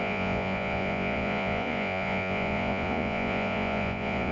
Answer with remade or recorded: remade